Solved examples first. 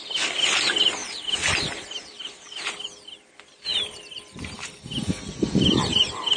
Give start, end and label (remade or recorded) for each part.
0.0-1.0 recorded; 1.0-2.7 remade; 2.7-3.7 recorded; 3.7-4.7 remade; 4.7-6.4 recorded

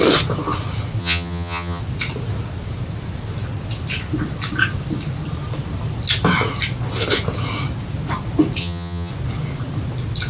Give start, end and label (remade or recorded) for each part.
0.0-1.0 recorded; 1.0-1.8 remade; 1.8-8.6 recorded; 8.6-9.1 remade; 9.1-10.3 recorded

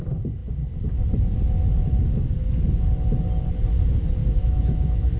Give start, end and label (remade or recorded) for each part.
0.0-4.2 recorded; 4.2-5.2 remade

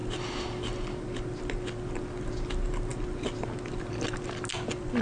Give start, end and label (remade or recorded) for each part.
0.0-5.0 recorded